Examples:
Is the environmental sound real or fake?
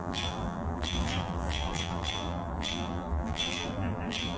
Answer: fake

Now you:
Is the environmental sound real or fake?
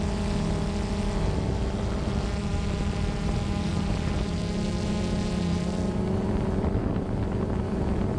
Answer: real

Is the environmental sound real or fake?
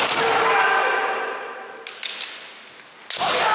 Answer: real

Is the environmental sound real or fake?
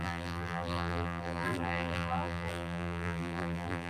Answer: fake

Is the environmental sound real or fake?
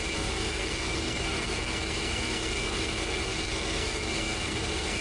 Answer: fake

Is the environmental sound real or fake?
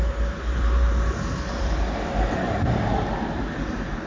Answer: fake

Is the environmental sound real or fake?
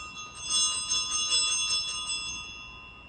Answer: real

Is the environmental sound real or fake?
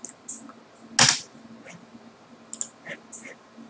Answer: real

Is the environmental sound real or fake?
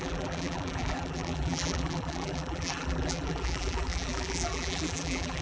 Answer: fake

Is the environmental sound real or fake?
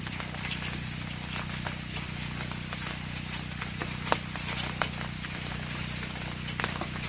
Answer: fake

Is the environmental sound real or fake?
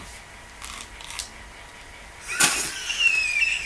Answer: real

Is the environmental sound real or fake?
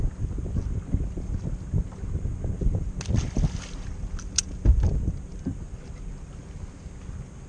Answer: real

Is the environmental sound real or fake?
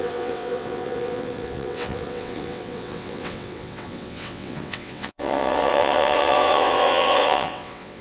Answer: fake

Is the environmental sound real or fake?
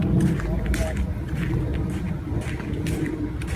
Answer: real